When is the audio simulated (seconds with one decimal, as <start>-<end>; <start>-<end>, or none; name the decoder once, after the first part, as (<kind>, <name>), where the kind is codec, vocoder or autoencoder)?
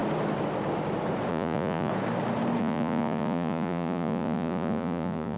1.3-1.9 (vocoder, Vocos); 2.6-5.4